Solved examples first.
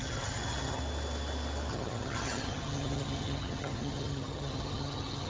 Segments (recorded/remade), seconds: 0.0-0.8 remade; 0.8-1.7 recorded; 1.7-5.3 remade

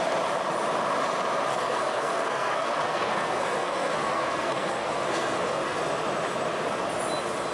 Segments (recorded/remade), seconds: 0.0-1.5 recorded; 1.5-5.8 remade; 5.8-7.5 recorded

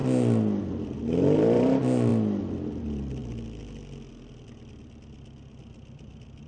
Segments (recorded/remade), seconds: 0.0-2.1 remade; 2.1-2.8 recorded; 2.8-3.2 remade; 3.2-4.1 recorded; 4.1-6.5 remade

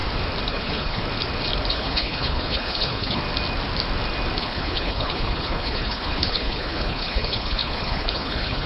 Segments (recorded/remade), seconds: 0.0-0.5 recorded; 0.5-1.0 remade; 1.0-1.7 recorded; 1.7-3.2 remade; 3.2-4.4 recorded; 4.4-8.7 remade